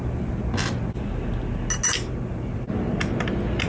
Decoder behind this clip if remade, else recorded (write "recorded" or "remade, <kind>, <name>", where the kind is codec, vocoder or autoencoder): recorded